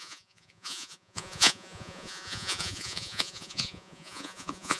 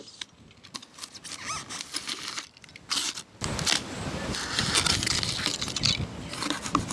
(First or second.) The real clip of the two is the second